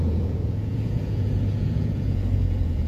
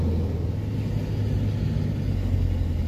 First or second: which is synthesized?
first